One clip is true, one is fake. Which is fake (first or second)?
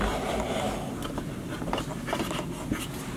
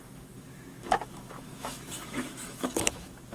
second